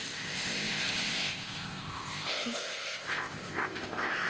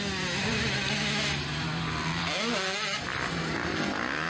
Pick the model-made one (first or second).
first